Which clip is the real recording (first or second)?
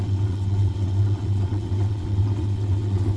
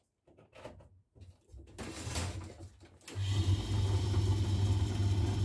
second